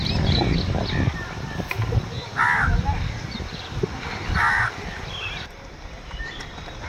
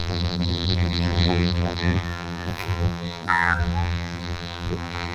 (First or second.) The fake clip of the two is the second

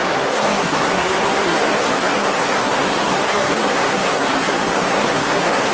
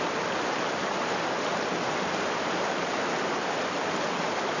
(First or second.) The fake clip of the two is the first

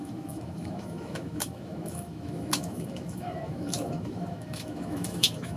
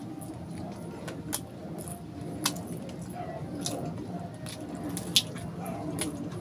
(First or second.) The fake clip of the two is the first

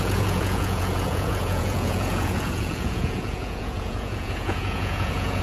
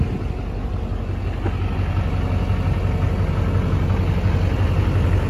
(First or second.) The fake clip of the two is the first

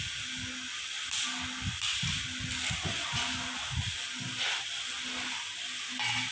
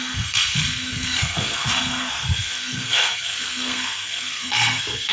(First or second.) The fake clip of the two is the second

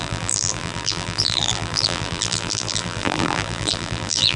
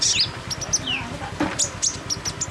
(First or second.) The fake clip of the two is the first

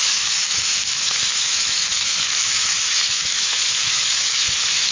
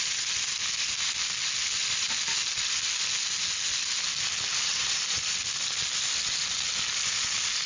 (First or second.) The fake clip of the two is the first